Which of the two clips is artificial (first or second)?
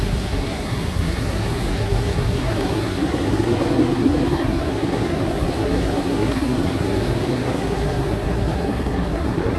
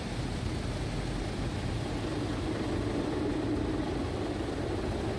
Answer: first